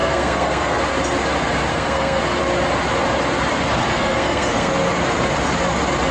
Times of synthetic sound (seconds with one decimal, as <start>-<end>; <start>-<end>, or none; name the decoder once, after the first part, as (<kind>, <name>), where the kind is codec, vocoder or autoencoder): 0.0-0.8 (codec, SNAC); 1.7-2.2; 3.9-4.7